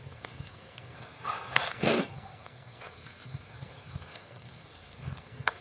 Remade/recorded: remade